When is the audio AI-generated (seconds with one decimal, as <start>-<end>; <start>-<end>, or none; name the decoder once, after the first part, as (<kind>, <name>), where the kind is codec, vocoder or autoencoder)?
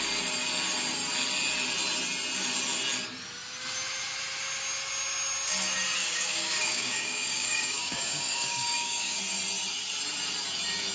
6.0-9.2 (codec, DAC)